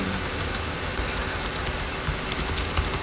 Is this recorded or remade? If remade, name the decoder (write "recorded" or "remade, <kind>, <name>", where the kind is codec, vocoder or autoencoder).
recorded